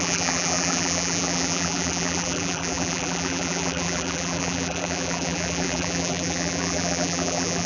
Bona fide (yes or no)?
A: no